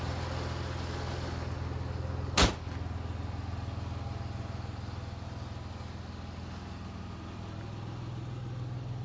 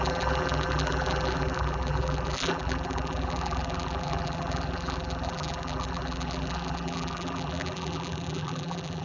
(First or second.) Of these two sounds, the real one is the first